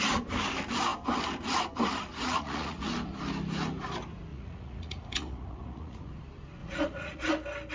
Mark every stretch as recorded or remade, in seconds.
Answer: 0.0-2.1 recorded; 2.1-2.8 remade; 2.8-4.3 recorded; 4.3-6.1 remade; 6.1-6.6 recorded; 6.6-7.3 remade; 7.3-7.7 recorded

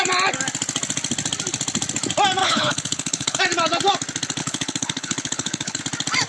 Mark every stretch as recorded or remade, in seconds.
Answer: 0.0-2.4 recorded; 2.4-3.4 remade; 3.4-4.4 recorded; 4.4-5.8 remade; 5.8-6.3 recorded

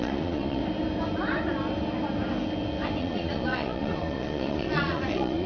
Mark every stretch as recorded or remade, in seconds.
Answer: 0.0-0.6 remade; 0.6-3.0 recorded; 3.0-5.5 remade